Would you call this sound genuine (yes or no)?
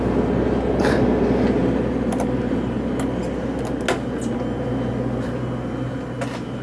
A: yes